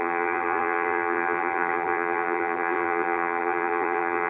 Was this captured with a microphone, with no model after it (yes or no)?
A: no